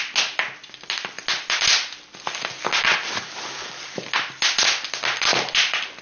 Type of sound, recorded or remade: recorded